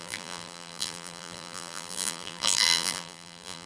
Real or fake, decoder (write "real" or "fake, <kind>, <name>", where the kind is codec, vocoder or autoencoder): fake, vocoder, BigVGAN v2